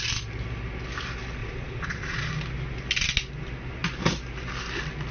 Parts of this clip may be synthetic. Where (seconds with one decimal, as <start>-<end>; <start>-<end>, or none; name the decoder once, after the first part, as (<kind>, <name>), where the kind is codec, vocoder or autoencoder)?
1.4-2.3 (vocoder, Vocos)